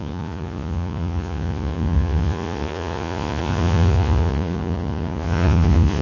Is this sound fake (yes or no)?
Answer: yes